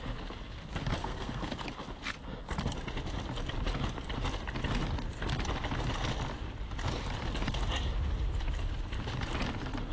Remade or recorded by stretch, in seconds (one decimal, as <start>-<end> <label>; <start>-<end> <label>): 0.0-1.0 recorded; 1.0-1.6 remade; 1.6-9.9 recorded